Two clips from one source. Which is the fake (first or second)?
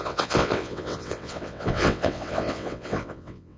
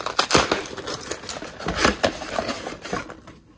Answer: first